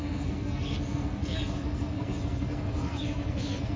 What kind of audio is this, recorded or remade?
remade